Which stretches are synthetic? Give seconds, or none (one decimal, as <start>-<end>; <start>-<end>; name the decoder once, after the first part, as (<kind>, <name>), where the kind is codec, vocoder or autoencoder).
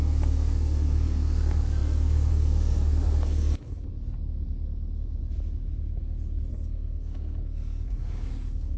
0.0-3.9 (codec, SNAC); 6.5-8.8